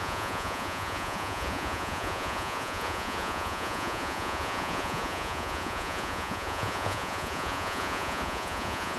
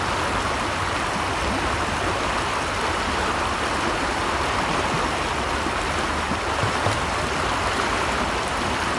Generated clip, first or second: first